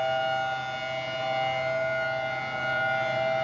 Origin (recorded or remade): recorded